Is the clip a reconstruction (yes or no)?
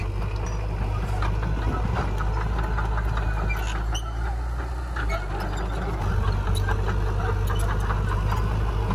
no